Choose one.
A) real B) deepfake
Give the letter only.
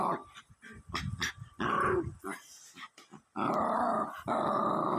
A